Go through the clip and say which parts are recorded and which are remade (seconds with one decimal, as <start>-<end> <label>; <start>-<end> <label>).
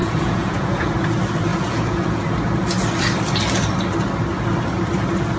0.0-0.9 remade; 0.9-1.5 recorded; 1.5-2.2 remade; 2.2-5.4 recorded